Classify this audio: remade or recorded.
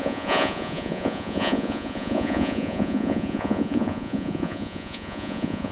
remade